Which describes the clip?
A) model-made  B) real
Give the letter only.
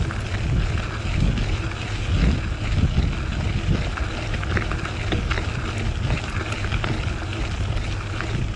B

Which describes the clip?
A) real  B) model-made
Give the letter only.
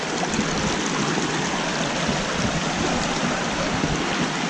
A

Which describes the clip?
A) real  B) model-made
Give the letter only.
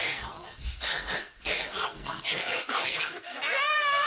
B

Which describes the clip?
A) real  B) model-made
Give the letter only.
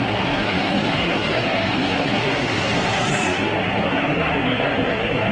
B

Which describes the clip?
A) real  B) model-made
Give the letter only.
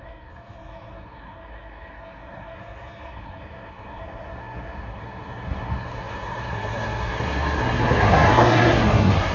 B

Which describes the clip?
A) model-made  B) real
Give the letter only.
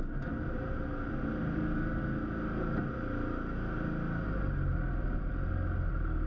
B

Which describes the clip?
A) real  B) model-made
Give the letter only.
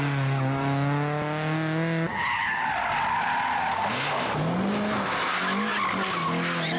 A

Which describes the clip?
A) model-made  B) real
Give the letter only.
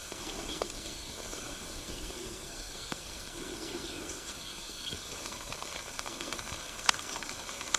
A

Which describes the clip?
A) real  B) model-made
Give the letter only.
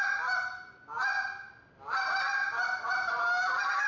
A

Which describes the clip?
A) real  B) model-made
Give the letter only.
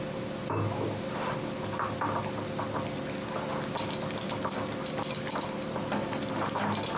A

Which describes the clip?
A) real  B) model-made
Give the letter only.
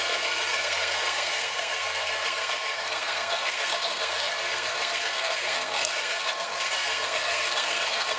B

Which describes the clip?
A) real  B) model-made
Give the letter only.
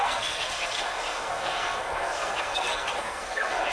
B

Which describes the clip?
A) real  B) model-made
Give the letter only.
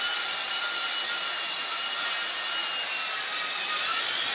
A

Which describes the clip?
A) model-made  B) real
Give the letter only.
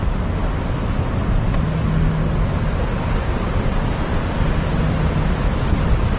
B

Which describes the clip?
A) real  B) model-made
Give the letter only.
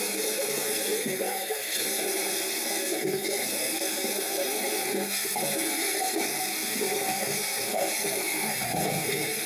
B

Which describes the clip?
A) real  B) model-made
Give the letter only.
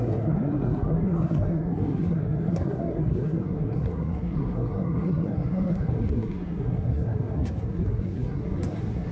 B